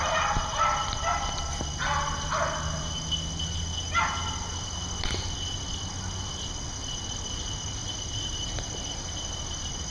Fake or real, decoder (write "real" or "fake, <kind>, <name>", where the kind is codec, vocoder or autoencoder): real